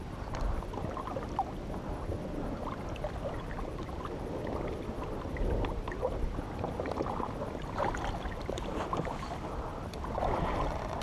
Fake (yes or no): no